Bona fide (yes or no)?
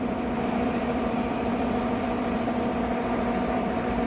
no